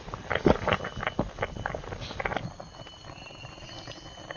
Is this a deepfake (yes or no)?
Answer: no